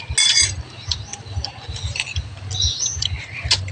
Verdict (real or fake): real